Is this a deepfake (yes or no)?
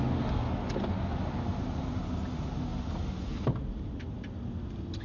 no